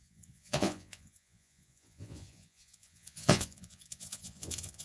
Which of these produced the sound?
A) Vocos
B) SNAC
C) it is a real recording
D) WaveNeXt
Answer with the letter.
A